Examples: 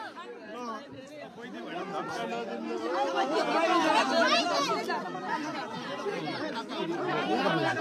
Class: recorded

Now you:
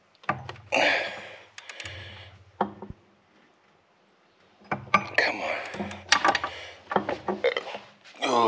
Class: recorded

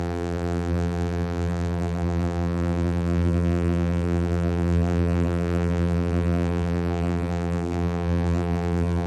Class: remade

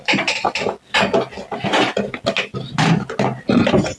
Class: recorded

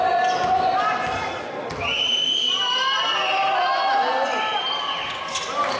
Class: recorded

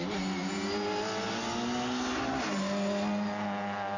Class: recorded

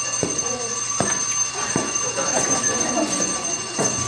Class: remade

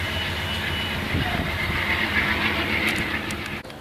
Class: recorded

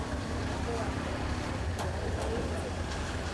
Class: recorded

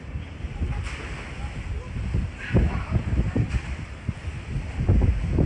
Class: recorded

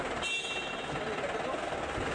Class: recorded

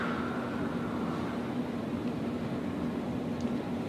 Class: recorded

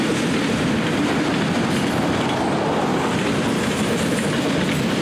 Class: recorded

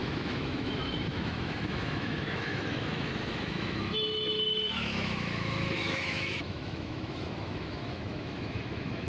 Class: remade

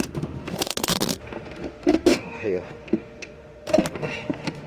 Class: remade